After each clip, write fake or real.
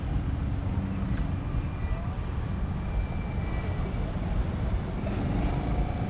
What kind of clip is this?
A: real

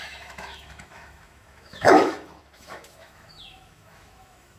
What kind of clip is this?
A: fake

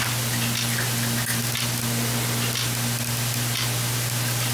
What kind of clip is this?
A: real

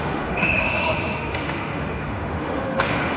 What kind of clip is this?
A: fake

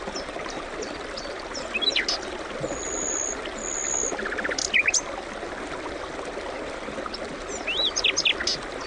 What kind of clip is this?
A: real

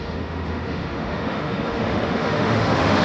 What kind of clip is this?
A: fake